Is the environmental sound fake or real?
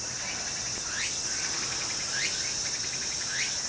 real